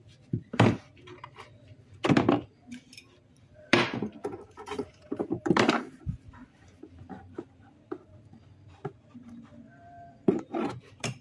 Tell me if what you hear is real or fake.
fake